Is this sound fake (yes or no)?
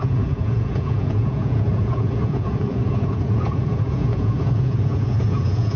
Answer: yes